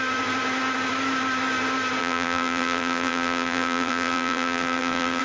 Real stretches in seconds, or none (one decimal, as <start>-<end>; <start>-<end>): 0.0-2.0